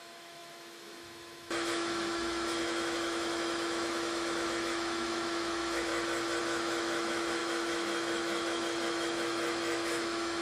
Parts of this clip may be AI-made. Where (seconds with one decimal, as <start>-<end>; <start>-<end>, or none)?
0.0-5.9; 6.4-10.4